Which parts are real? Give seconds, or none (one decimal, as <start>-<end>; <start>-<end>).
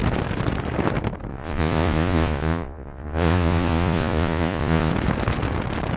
0.0-1.3; 4.9-6.0